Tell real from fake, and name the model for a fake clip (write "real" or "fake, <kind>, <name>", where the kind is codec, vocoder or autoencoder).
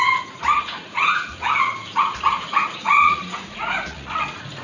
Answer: fake, vocoder, Vocos